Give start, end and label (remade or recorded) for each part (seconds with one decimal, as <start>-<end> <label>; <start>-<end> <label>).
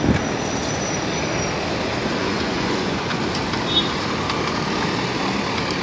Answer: 0.0-2.2 recorded; 2.2-3.2 remade; 3.2-5.8 recorded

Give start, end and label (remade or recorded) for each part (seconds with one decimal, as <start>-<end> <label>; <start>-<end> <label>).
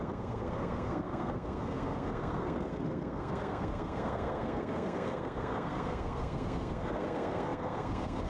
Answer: 0.0-8.3 remade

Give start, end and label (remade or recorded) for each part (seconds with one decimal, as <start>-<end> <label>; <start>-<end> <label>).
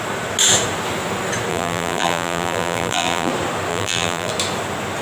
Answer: 0.0-1.5 recorded; 1.5-3.3 remade; 3.3-3.7 recorded; 3.7-4.3 remade; 4.3-5.0 recorded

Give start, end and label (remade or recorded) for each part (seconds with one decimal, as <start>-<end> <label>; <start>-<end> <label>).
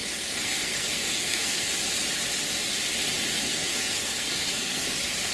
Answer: 0.0-1.7 remade; 1.7-3.3 recorded; 3.3-5.3 remade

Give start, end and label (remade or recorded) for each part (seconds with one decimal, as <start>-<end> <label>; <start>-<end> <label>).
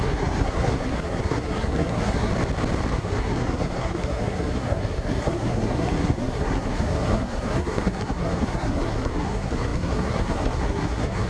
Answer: 0.0-2.3 remade; 2.3-2.9 recorded; 2.9-11.3 remade